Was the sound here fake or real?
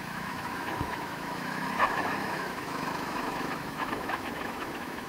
fake